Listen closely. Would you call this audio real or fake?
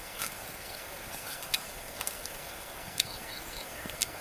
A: fake